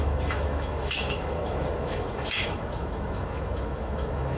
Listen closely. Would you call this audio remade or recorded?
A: remade